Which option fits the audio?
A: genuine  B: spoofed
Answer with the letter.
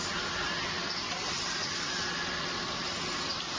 A